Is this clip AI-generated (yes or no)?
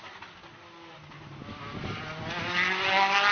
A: no